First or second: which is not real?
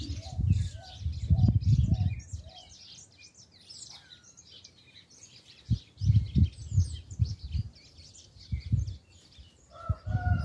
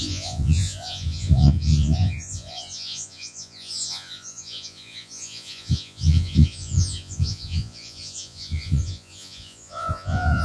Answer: second